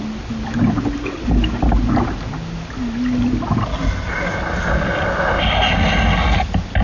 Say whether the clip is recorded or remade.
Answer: recorded